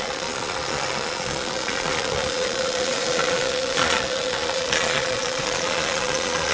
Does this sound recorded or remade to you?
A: remade